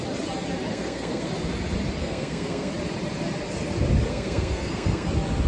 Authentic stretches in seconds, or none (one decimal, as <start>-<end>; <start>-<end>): 0.0-0.7; 1.3-2.0; 2.7-4.1; 5.1-5.5